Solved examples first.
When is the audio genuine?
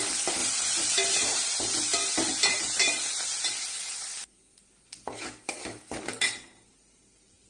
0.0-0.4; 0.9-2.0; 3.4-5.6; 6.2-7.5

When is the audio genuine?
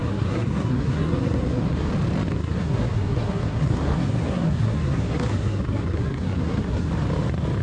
1.9-2.3; 6.9-7.6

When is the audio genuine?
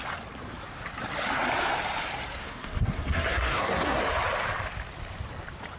0.0-2.4; 4.0-5.8